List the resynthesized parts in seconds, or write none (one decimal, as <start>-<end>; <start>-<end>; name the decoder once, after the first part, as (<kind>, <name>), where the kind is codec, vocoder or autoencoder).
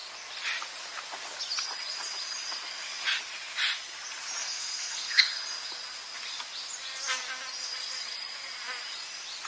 4.4-5.2 (codec, SNAC)